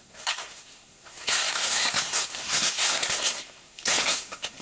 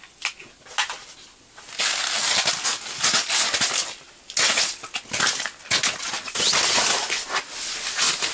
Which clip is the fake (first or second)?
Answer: first